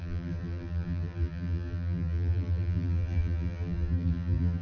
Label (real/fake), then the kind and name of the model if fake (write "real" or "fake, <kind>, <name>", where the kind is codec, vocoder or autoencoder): fake, vocoder, BigVGAN v2